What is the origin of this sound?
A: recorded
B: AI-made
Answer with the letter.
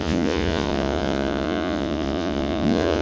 B